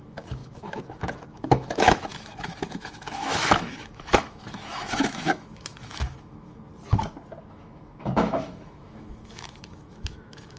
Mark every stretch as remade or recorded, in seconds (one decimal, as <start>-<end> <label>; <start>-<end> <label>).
0.0-6.7 remade; 6.7-7.4 recorded; 7.4-10.6 remade